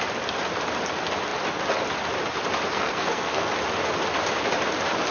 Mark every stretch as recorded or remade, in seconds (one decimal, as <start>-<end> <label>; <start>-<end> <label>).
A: 0.0-2.7 recorded; 2.7-3.5 remade; 3.5-5.1 recorded